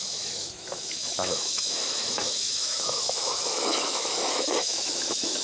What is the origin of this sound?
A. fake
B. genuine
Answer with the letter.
A